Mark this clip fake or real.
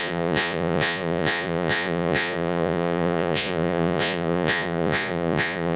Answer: fake